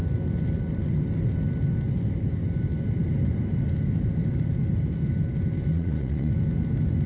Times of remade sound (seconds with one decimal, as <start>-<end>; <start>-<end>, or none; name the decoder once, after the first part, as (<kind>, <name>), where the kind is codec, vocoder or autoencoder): 5.7-6.3 (vocoder, Vocos)